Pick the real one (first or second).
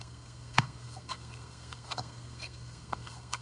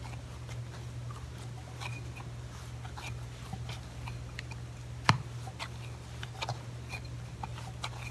second